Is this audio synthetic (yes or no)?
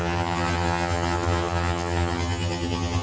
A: yes